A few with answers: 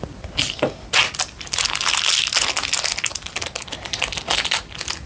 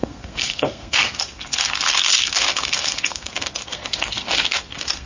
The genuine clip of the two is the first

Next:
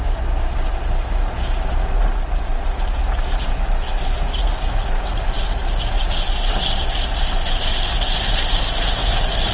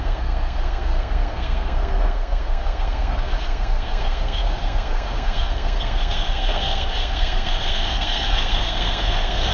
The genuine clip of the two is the first